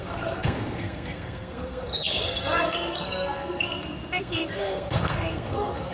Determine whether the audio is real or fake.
fake